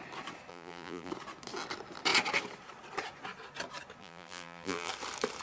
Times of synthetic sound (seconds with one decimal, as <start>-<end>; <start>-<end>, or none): 0.5-1.1; 4.0-4.9